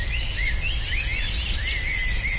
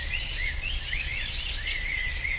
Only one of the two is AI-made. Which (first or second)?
second